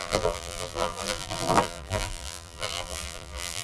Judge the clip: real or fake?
fake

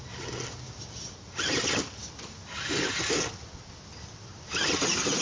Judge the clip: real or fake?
real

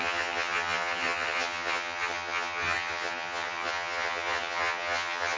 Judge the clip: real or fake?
fake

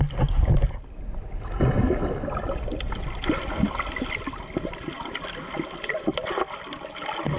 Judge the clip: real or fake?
real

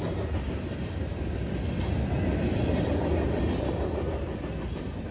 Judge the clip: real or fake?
real